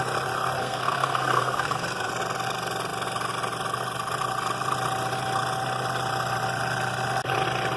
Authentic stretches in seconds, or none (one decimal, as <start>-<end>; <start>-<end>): 0.0-0.6; 2.1-7.8